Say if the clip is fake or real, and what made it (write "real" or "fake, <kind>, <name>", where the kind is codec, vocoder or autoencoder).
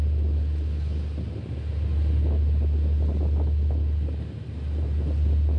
real